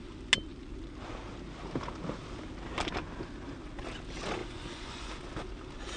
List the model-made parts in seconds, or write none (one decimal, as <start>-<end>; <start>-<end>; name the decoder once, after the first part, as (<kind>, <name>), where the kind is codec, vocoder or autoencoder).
4.4-5.1 (vocoder, Vocos)